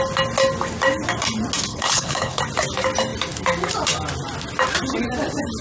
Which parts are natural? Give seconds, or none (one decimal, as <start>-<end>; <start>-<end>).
0.0-1.7; 2.4-5.6

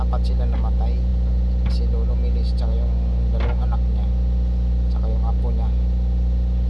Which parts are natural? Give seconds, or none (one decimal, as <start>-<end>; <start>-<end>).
0.0-6.7